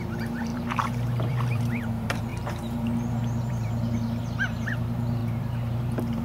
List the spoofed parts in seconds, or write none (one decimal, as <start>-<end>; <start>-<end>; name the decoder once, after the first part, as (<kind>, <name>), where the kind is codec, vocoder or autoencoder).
0.0-6.2 (vocoder, BigVGAN v2)